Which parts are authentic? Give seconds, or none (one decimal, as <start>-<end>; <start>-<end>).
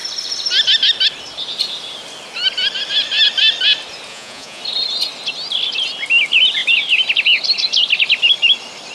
0.0-4.1; 4.6-8.9